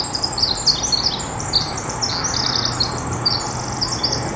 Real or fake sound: real